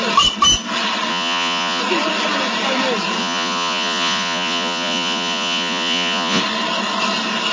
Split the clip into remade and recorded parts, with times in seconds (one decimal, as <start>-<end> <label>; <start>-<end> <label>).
0.0-1.1 recorded; 1.1-1.8 remade; 1.8-3.2 recorded; 3.2-6.4 remade; 6.4-7.5 recorded